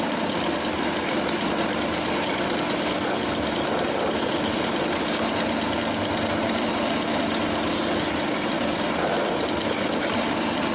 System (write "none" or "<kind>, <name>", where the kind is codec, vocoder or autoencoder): none